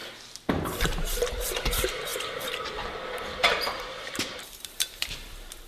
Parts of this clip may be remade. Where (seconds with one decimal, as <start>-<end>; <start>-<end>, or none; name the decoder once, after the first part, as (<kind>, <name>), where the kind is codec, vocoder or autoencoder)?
0.5-5.7 (vocoder, BigVGAN v2)

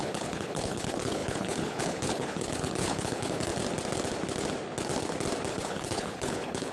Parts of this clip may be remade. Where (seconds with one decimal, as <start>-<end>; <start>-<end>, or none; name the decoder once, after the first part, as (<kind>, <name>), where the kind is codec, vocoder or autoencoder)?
0.0-3.5 (codec, HILCodec); 5.5-6.7

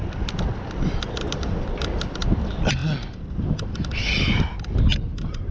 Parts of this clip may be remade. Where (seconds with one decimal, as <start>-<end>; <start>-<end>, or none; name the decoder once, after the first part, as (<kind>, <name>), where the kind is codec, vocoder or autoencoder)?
none

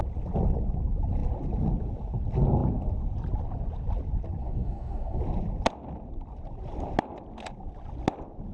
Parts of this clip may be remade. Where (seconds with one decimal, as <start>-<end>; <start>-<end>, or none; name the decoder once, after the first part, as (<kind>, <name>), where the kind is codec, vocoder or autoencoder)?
4.4-5.2 (codec, DAC)